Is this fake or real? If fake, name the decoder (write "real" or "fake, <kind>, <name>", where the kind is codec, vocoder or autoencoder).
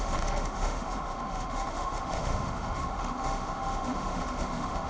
fake, autoencoder, DAC-VAE